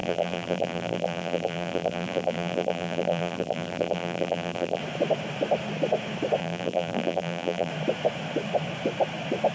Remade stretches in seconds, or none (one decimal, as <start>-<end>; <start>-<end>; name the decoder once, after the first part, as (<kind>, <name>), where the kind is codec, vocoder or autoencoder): 0.0-4.8 (vocoder, BigVGAN v2); 6.4-7.7